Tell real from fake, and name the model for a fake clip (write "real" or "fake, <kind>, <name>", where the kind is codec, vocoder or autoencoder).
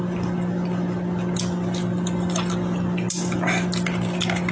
real